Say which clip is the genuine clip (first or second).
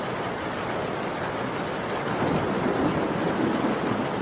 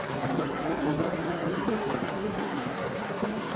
first